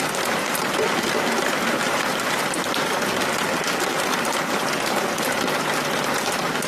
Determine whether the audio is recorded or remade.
recorded